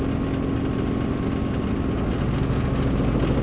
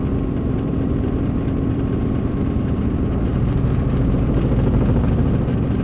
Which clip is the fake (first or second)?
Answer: second